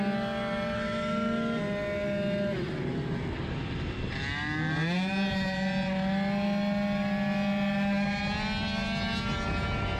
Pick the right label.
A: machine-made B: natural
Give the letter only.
B